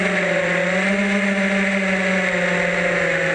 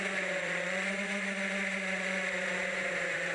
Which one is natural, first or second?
first